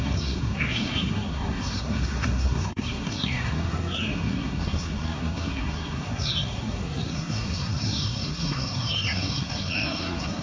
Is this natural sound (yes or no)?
no